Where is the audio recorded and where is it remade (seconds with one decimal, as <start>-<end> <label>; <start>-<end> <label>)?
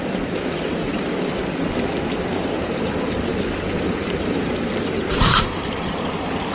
0.0-1.4 remade; 1.4-2.3 recorded; 2.3-3.3 remade; 3.3-3.9 recorded; 3.9-6.5 remade